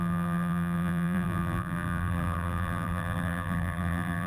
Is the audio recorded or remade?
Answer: remade